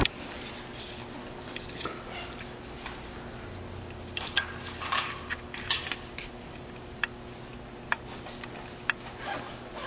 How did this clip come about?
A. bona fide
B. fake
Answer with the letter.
A